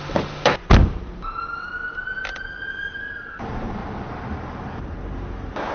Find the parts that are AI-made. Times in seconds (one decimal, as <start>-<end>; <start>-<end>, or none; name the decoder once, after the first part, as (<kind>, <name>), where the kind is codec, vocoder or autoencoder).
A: none